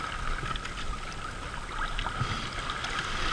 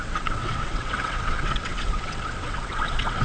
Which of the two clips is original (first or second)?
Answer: first